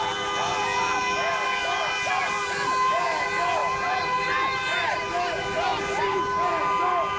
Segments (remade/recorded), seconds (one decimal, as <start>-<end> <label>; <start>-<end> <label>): 0.0-7.2 recorded